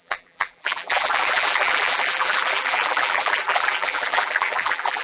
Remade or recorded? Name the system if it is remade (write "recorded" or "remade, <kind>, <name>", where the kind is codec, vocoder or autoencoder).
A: remade, vocoder, BigVGAN v2